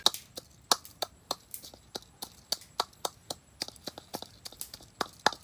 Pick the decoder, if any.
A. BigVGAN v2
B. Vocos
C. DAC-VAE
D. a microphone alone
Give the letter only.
D